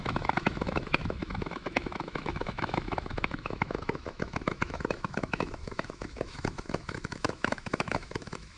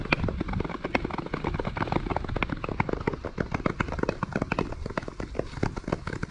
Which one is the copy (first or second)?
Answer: first